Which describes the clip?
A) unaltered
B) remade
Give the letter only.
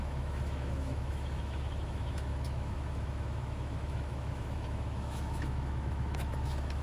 B